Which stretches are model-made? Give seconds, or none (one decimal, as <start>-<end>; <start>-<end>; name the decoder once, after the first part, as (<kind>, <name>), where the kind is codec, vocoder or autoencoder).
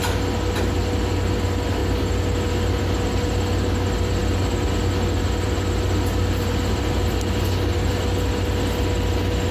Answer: none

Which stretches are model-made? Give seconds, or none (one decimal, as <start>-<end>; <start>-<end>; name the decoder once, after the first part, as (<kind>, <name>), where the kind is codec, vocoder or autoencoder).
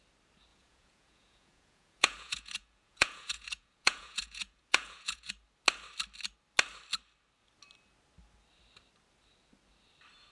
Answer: 0.5-5.3 (vocoder, Vocos)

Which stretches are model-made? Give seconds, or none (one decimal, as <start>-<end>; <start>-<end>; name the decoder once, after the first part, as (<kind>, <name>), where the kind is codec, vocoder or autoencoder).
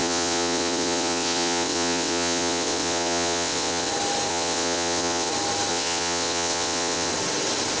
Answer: 0.0-3.9 (vocoder, WaveNeXt); 4.3-5.3; 5.7-7.1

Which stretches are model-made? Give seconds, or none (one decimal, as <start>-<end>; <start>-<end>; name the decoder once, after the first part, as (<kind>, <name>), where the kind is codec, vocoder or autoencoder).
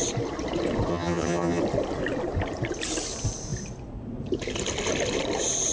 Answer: 0.9-1.6 (vocoder, HiFi-GAN)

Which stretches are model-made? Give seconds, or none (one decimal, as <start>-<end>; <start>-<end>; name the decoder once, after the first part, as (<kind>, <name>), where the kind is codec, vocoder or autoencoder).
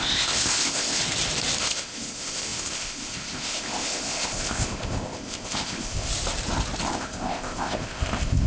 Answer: 0.0-1.0 (codec, ZipCodec); 1.6-6.1; 6.9-8.5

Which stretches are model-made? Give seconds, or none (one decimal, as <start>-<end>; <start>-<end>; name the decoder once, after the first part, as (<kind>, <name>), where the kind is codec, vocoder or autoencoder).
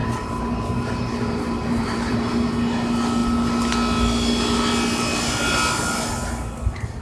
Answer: 0.0-2.3 (vocoder, BigVGAN v2)